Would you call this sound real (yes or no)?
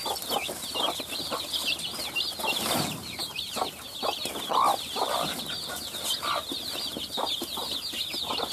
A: yes